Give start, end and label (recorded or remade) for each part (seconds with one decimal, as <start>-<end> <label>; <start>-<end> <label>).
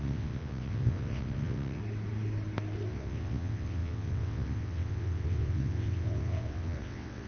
0.0-1.8 remade; 1.8-2.9 recorded; 2.9-7.3 remade